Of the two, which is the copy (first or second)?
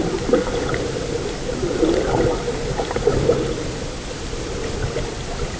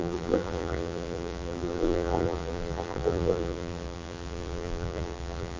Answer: second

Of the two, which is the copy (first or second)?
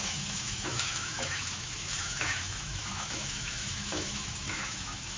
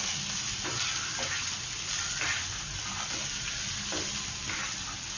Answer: first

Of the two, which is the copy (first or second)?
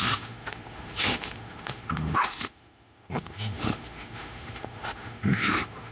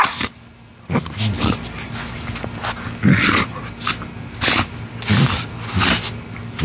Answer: first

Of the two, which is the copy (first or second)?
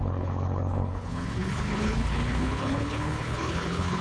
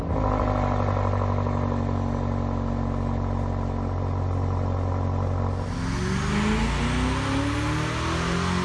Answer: first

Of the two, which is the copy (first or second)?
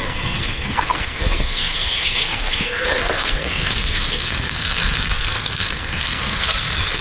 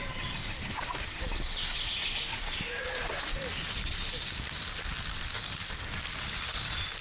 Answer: first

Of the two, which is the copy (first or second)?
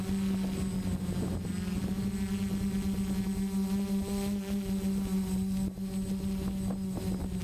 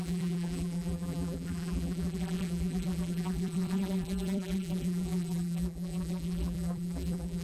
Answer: second